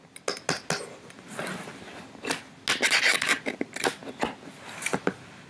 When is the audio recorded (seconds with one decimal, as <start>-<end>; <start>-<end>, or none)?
0.0-5.5